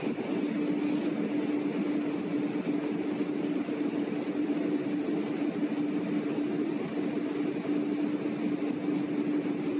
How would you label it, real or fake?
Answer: real